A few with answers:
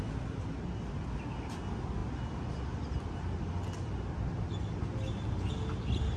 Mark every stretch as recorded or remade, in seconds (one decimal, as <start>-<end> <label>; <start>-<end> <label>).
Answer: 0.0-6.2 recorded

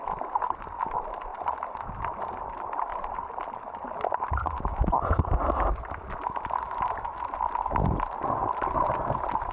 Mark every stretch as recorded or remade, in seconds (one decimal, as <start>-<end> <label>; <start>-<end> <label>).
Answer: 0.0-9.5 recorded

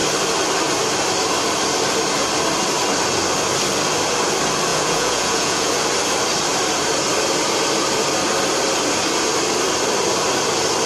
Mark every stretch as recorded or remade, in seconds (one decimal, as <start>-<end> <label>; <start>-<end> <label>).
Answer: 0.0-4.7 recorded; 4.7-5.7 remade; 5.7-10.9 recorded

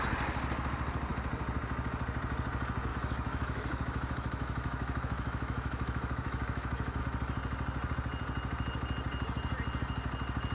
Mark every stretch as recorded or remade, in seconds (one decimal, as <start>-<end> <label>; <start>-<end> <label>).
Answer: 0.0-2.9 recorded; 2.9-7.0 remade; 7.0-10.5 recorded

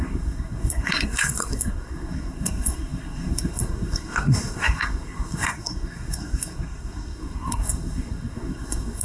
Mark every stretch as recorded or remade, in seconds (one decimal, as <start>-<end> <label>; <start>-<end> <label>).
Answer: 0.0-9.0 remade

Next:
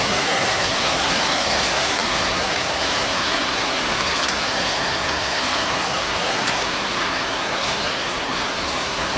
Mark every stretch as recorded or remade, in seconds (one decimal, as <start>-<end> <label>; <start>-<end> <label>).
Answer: 0.0-9.2 remade